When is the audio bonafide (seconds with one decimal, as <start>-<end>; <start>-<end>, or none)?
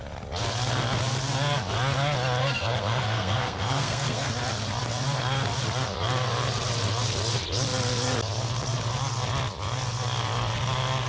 0.0-2.4; 4.3-11.1